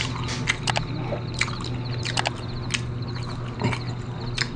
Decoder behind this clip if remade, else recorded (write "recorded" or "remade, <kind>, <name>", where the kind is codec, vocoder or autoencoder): recorded